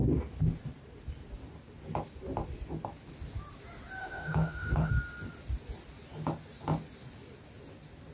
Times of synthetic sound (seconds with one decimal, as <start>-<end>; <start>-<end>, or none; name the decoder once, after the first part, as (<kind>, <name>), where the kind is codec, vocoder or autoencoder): 4.0-4.9 (autoencoder, DAC-VAE)